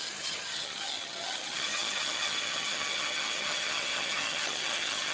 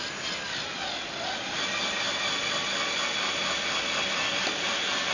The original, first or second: second